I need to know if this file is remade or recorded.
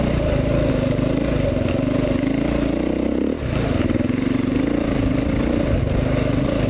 recorded